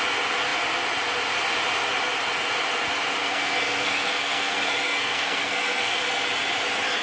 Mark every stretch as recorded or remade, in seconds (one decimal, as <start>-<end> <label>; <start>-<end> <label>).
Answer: 0.0-3.2 recorded; 3.2-6.0 remade; 6.0-7.0 recorded

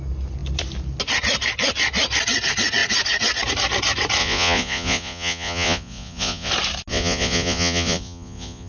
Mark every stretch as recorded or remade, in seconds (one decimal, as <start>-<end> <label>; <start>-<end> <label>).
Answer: 0.0-4.2 recorded; 4.2-6.5 remade; 6.5-6.9 recorded; 6.9-8.7 remade

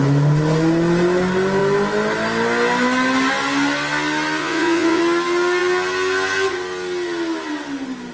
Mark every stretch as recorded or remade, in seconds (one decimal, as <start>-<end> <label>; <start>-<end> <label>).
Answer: 0.0-4.4 recorded; 4.4-5.0 remade; 5.0-8.1 recorded

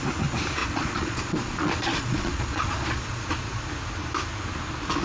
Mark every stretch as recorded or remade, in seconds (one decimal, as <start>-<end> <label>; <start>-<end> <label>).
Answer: 0.0-0.6 recorded; 0.6-3.6 remade; 3.6-5.0 recorded

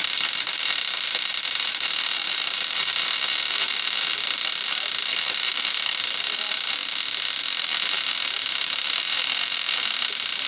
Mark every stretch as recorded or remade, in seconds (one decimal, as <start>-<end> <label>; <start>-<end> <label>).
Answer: 0.0-6.8 remade; 6.8-7.6 recorded; 7.6-10.5 remade

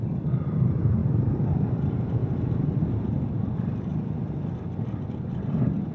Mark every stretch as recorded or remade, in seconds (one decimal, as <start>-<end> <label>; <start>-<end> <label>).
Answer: 0.0-3.9 remade; 3.9-5.9 recorded